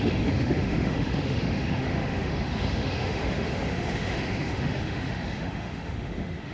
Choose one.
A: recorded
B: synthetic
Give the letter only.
B